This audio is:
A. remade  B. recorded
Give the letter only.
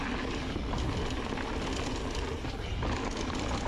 B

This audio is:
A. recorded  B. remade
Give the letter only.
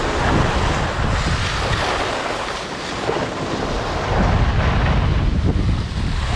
A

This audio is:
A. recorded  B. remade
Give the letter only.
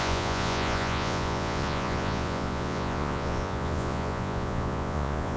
B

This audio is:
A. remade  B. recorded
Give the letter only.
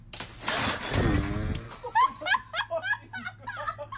B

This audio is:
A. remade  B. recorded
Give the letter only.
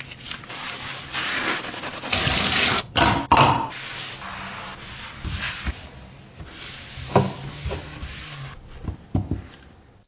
B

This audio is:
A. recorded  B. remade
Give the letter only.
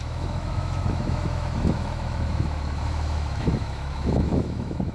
B